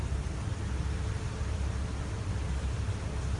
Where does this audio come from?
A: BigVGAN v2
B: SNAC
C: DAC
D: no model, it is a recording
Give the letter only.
A